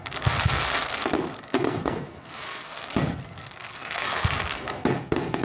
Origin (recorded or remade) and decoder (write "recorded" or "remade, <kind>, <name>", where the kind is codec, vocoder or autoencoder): remade, codec, SNAC